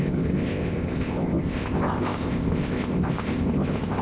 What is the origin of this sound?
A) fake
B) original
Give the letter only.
A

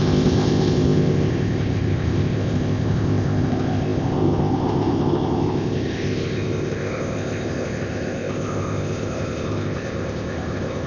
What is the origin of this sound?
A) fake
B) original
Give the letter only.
A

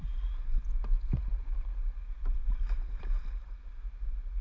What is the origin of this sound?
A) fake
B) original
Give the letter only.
B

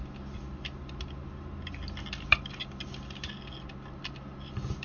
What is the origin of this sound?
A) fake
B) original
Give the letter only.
B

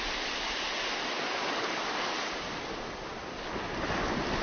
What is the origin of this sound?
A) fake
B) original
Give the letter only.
B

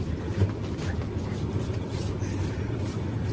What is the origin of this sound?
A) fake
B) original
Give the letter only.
B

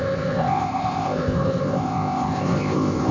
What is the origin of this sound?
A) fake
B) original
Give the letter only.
A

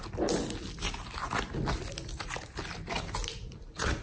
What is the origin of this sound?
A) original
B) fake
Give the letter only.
A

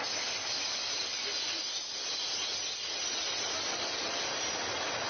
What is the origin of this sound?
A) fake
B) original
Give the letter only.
B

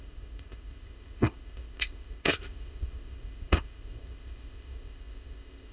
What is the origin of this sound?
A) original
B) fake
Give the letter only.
B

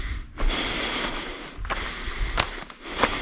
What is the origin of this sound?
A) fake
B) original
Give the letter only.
B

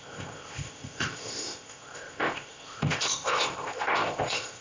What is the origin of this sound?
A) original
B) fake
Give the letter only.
B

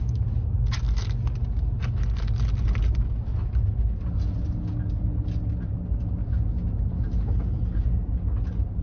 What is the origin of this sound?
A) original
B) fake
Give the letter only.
A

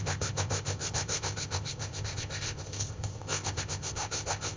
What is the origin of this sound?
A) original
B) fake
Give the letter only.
B